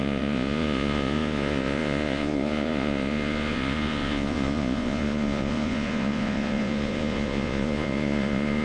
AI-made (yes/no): yes